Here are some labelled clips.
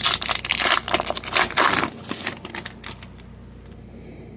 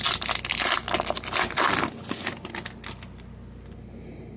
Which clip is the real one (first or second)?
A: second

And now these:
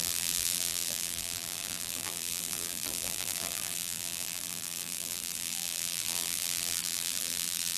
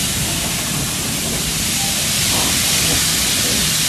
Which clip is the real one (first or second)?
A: second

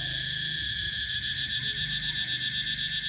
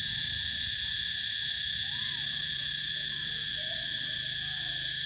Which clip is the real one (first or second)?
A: first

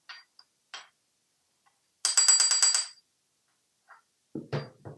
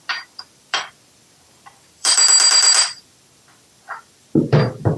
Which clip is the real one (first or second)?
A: first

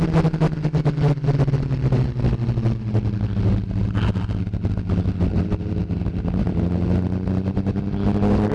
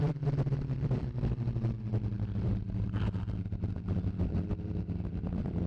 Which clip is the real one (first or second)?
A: first